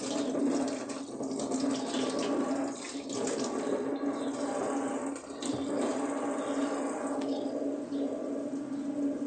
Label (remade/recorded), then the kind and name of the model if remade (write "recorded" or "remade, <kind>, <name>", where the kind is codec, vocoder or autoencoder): recorded